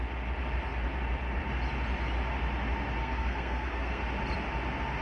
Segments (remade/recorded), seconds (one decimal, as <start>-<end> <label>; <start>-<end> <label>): 0.0-3.0 recorded; 3.0-4.0 remade; 4.0-5.0 recorded